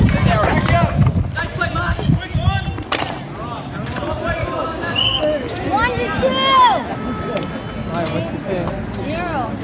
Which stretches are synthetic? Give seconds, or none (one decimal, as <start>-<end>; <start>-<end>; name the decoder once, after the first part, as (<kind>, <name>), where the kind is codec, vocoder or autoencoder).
4.4-5.2 (codec, DAC)